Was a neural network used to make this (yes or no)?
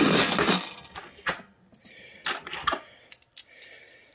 no